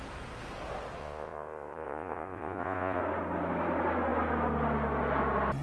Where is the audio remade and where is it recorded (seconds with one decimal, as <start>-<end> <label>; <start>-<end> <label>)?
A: 0.0-1.0 recorded; 1.0-3.0 remade; 3.0-5.6 recorded